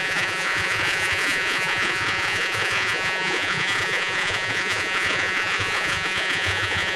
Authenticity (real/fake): fake